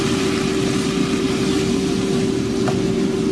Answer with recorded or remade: recorded